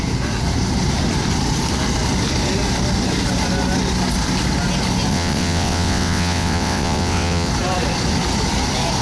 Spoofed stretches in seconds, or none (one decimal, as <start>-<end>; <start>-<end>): 5.1-7.5